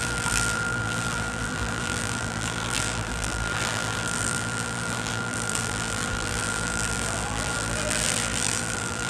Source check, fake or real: fake